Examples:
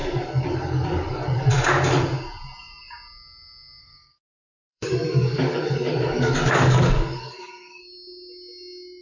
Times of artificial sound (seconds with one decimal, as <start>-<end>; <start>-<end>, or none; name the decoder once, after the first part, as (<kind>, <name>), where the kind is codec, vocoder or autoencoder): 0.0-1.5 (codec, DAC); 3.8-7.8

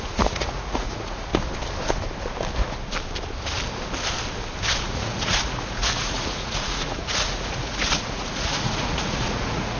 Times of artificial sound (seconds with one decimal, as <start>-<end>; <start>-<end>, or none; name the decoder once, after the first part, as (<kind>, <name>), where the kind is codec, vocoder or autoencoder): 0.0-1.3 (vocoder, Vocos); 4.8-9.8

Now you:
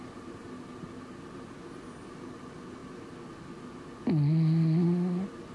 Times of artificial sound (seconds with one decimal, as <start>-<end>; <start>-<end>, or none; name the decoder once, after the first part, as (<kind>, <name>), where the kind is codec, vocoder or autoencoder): none